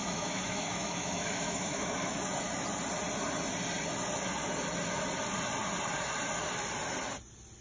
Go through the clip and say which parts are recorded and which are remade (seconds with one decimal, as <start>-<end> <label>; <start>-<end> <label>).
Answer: 0.0-2.2 remade; 2.2-7.6 recorded